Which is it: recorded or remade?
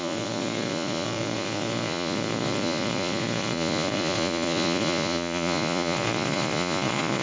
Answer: remade